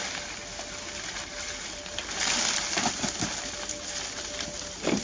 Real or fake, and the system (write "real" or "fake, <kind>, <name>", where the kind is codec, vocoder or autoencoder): real